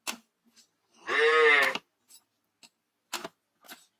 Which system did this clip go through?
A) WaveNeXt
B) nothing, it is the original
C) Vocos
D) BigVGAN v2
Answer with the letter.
B